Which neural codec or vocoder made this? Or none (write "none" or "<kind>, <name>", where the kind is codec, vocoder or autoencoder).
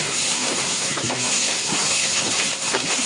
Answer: codec, SNAC